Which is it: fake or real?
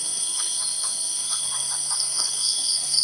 fake